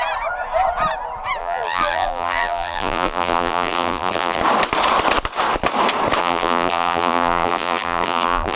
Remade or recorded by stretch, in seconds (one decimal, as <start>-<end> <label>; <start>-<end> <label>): 0.0-1.4 recorded; 1.4-4.4 remade; 4.4-6.2 recorded; 6.2-8.6 remade